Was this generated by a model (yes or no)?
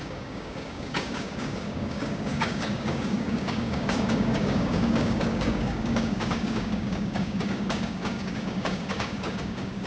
yes